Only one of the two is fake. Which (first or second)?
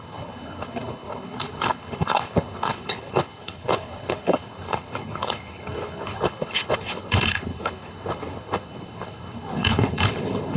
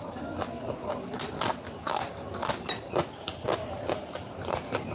first